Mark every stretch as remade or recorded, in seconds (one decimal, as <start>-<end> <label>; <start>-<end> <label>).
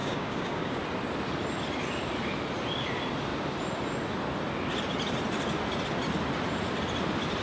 0.0-0.8 remade; 0.8-7.4 recorded